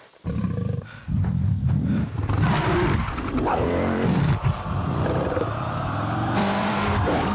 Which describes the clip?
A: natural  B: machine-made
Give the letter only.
B